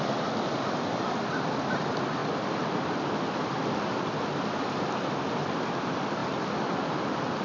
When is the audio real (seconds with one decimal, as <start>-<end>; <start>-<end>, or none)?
0.0-7.4